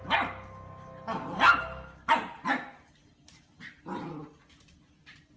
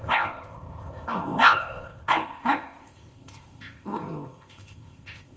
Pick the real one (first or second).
first